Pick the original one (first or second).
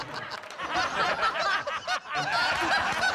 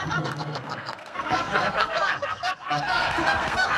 first